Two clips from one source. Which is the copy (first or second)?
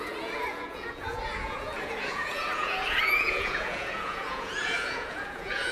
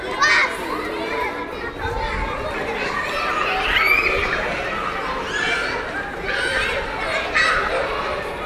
first